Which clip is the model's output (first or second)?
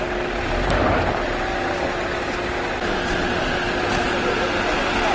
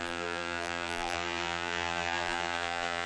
second